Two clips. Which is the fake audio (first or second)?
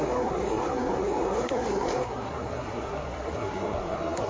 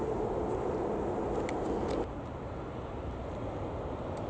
first